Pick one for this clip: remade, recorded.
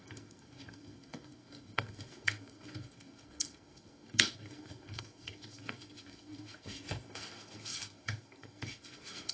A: remade